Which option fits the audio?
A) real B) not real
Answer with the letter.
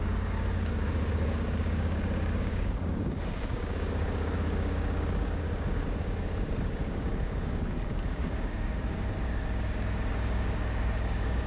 B